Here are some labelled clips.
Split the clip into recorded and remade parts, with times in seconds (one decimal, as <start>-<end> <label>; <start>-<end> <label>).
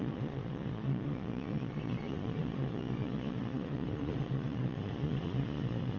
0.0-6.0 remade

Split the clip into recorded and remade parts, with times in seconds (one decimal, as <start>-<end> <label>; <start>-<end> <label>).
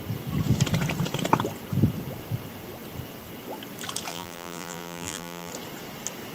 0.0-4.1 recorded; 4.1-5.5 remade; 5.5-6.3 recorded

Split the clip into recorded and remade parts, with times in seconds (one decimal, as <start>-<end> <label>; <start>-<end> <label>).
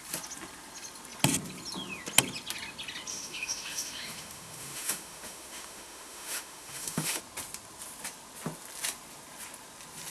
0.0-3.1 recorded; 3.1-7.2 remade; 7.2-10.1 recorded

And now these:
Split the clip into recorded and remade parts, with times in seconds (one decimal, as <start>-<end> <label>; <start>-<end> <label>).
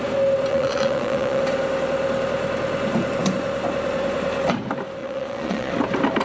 0.0-0.5 recorded; 0.5-1.4 remade; 1.4-5.0 recorded; 5.0-5.7 remade; 5.7-6.2 recorded